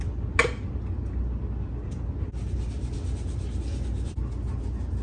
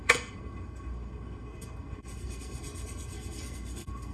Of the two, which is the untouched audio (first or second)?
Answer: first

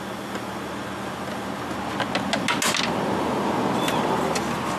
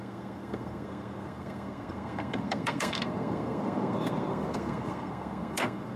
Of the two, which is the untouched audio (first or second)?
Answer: first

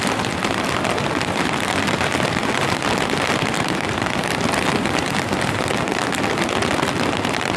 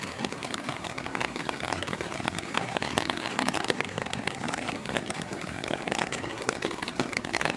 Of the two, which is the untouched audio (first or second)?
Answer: first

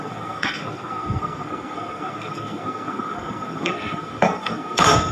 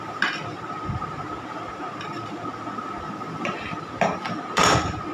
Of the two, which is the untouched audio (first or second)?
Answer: second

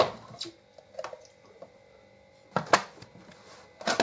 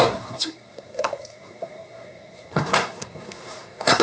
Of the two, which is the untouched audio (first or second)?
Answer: first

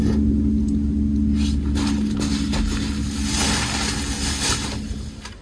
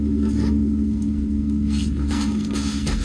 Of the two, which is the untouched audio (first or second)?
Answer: first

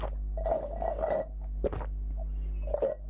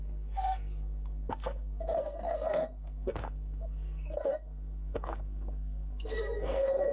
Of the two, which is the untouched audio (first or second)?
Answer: first